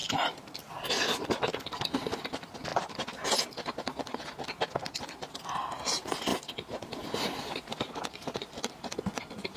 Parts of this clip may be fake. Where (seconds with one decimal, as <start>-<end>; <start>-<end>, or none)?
0.0-0.7